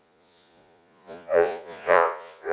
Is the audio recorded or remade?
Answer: remade